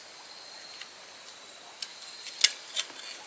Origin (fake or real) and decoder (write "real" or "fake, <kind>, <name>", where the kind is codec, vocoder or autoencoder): real